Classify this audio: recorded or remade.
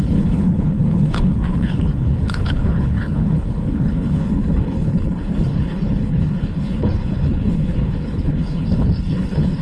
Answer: remade